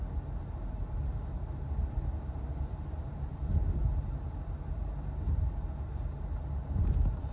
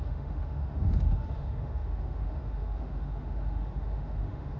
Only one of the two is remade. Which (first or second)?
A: second